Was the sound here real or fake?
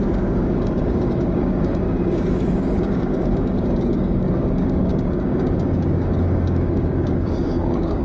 fake